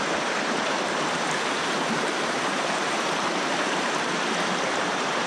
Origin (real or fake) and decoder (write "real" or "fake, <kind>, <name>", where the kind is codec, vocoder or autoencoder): fake, vocoder, BigVGAN v2